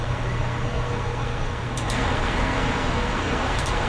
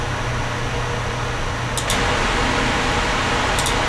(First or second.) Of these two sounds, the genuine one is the second